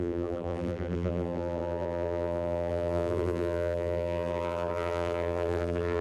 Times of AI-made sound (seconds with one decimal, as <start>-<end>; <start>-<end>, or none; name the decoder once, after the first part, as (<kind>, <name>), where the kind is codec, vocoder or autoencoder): 0.0-6.0 (vocoder, BigVGAN v2)